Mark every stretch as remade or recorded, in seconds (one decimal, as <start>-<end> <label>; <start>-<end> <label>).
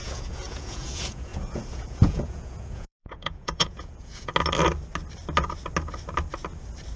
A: 0.0-4.3 remade; 4.3-7.0 recorded